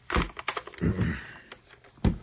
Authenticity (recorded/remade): recorded